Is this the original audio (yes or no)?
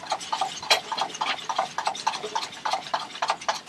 yes